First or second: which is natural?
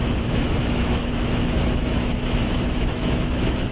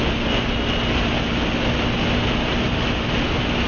second